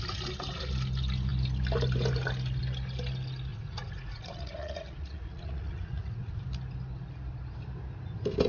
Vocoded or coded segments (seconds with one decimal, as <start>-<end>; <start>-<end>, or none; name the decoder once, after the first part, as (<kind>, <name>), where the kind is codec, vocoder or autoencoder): 3.5-6.4 (vocoder, Vocos)